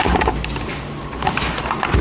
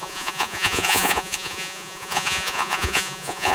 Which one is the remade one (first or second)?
second